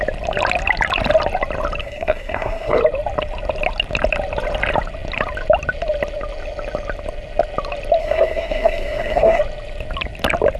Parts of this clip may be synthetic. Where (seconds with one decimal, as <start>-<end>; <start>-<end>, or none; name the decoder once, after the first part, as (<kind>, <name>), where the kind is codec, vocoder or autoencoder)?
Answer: 1.8-2.8 (codec, SNAC); 8.0-9.4